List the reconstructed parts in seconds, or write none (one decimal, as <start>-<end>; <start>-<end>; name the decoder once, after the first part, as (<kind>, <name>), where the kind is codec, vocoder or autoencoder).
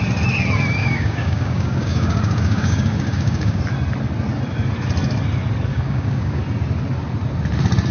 0.8-3.6 (codec, DAC); 5.7-6.4